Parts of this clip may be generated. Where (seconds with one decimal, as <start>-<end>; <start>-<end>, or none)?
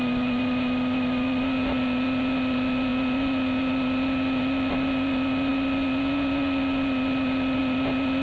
none